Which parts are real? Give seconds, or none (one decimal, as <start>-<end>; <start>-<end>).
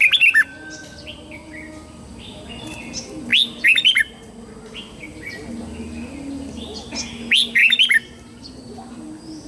0.0-9.5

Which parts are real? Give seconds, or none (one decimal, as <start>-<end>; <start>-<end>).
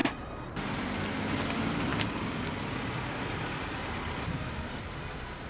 0.0-5.5